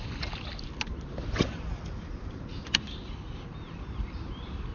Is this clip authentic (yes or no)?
yes